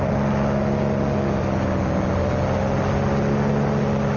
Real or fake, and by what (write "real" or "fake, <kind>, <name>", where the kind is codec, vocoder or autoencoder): real